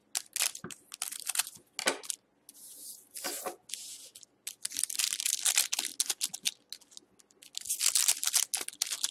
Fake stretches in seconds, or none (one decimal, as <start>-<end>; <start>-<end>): none